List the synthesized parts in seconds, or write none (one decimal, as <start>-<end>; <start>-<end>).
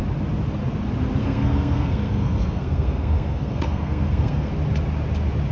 1.2-4.5